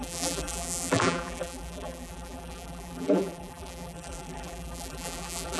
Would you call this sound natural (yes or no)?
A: no